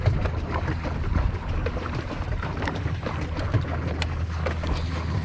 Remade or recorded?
recorded